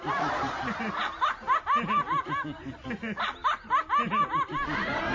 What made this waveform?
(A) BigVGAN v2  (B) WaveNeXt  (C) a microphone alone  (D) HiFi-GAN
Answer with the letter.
C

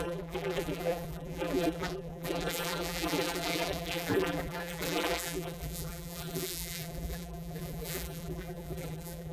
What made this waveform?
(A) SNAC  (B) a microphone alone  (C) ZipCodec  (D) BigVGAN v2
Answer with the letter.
D